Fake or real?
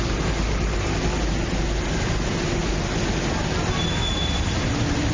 real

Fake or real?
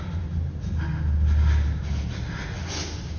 real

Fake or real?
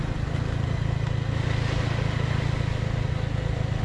real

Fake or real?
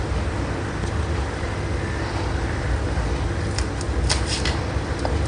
real